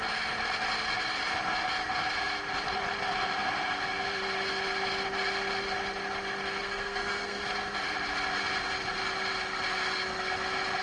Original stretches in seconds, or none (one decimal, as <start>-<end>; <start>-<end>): 0.0-6.6; 7.4-10.8